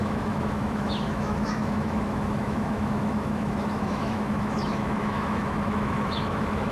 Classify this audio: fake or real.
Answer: fake